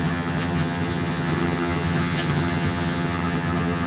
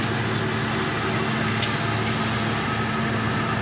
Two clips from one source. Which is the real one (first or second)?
second